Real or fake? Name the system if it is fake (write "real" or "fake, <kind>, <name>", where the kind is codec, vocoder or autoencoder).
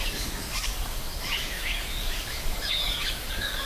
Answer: fake, codec, DAC